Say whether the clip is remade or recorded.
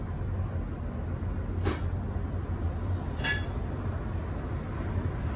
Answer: recorded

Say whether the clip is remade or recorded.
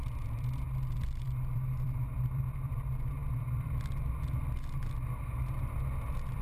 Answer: recorded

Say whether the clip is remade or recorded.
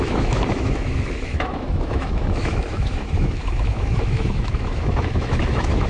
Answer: remade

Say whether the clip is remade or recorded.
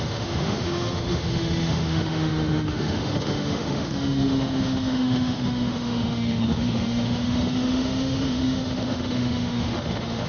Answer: remade